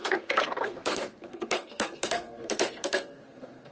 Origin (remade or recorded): remade